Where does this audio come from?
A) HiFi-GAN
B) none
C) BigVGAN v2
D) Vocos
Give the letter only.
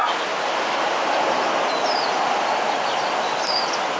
B